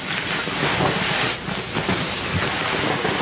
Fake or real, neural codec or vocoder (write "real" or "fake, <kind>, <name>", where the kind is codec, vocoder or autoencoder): real